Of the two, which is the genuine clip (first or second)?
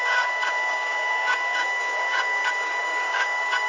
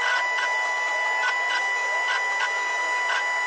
second